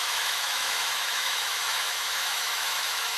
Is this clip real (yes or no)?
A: no